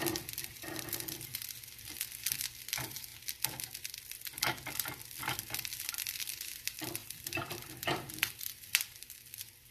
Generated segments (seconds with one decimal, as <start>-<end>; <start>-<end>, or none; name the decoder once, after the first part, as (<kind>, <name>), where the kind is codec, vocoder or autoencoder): 0.0-1.3 (vocoder, BigVGAN v2); 2.4-3.1; 5.2-9.7